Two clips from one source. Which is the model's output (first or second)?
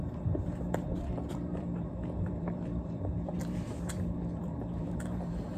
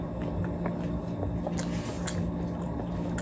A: first